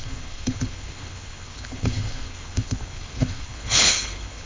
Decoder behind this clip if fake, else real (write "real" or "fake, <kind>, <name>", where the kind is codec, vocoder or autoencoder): fake, codec, HILCodec